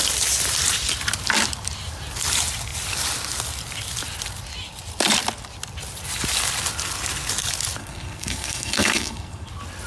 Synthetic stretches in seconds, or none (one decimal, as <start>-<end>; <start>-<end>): 7.8-9.5